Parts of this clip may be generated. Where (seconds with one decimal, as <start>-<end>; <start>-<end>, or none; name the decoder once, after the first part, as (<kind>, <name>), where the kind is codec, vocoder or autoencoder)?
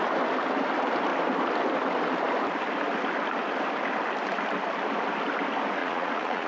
5.8-6.5 (vocoder, Vocos)